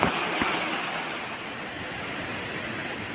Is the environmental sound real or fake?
real